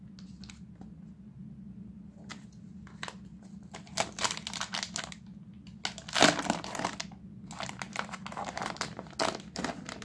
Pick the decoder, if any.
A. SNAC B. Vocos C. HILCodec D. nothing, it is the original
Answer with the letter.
D